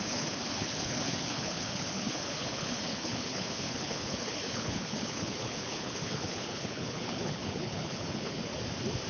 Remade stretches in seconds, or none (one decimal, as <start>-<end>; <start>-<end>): 0.0-8.5